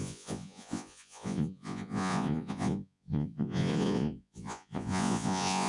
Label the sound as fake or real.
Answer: fake